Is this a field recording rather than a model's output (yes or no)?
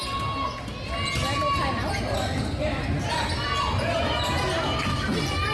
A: yes